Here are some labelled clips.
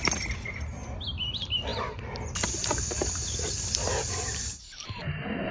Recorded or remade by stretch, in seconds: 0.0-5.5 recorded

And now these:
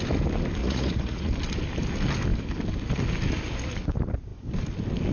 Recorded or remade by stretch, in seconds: 0.0-0.6 recorded; 0.6-1.3 remade; 1.3-5.1 recorded

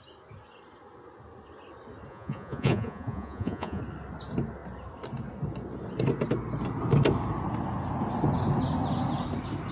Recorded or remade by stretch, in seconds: 0.0-2.1 recorded; 2.1-3.8 remade; 3.8-9.7 recorded

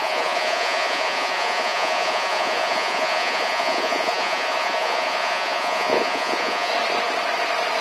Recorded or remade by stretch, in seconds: 0.0-6.7 remade; 6.7-7.8 recorded

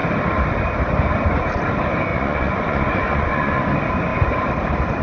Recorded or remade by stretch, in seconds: 0.0-2.1 recorded; 2.1-3.6 remade; 3.6-5.0 recorded

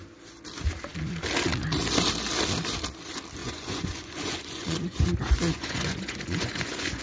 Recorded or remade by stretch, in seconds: 0.0-3.4 recorded; 3.4-7.0 remade